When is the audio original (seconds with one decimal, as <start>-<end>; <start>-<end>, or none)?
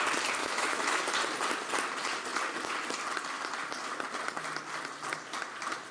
0.0-0.4; 1.0-5.9